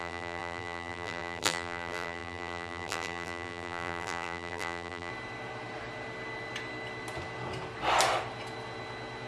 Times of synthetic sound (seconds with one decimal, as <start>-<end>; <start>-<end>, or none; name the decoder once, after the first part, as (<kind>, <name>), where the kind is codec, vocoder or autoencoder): 0.0-5.1 (vocoder, BigVGAN v2)